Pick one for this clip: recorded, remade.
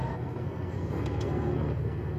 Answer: remade